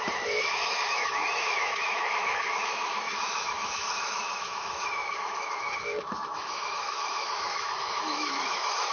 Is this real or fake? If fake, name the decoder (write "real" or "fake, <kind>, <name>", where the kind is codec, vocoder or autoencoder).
fake, autoencoder, DAC-VAE